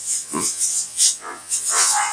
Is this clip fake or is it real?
fake